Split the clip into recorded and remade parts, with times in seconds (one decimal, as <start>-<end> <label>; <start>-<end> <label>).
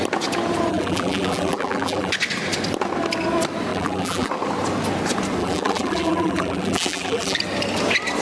0.0-0.7 recorded; 0.7-2.1 remade; 2.1-3.7 recorded; 3.7-4.3 remade; 4.3-5.4 recorded; 5.4-7.4 remade; 7.4-8.2 recorded